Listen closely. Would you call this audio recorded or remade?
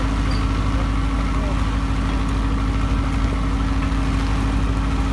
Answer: recorded